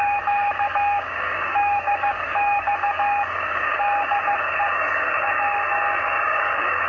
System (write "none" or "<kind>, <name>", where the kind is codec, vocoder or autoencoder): codec, DAC